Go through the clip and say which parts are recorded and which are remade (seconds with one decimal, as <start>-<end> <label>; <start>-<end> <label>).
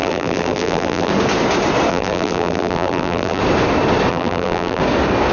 0.0-1.1 remade; 1.1-1.9 recorded; 1.9-3.4 remade; 3.4-4.1 recorded; 4.1-4.8 remade; 4.8-5.3 recorded